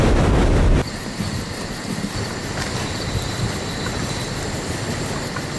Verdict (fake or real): real